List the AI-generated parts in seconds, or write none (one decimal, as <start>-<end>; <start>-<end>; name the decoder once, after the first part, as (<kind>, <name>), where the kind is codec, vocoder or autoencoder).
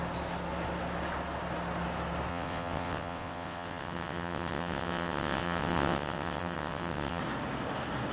2.3-7.2 (vocoder, WaveNeXt)